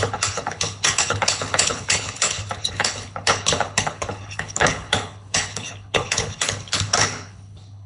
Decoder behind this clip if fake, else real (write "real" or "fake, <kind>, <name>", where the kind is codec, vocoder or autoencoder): fake, codec, HILCodec